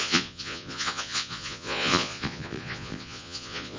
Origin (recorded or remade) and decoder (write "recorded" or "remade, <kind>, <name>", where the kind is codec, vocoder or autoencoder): remade, vocoder, Vocos